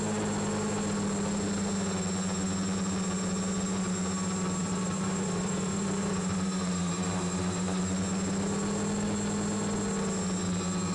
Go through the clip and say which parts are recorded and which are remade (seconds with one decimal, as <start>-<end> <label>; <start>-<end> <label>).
0.0-4.6 recorded; 4.6-7.8 remade; 7.8-10.9 recorded